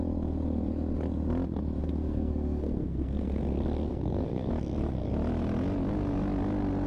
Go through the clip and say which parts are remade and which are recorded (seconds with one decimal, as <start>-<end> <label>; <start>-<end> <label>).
0.0-1.8 recorded; 1.8-3.4 remade; 3.4-3.9 recorded; 3.9-4.5 remade; 4.5-6.9 recorded